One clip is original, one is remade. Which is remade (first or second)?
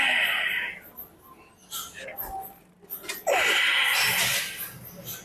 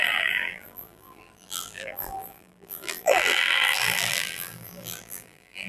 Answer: second